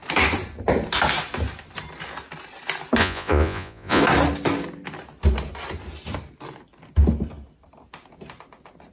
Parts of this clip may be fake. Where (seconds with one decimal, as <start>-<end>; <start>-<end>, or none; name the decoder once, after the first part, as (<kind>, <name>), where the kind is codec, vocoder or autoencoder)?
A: 3.0-4.0 (vocoder, Vocos)

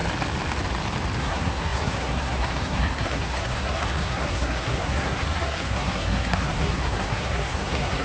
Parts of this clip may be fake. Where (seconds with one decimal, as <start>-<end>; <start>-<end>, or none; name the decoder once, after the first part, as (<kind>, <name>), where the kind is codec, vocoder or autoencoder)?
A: 1.2-8.0 (codec, SNAC)